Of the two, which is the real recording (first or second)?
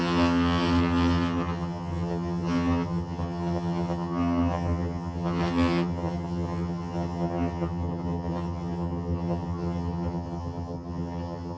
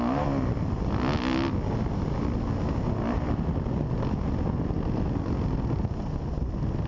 second